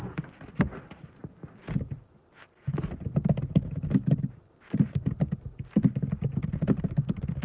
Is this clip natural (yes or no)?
yes